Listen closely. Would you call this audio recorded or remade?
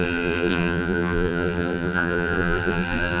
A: remade